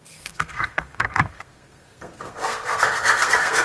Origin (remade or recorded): remade